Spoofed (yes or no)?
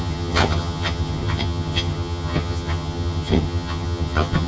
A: yes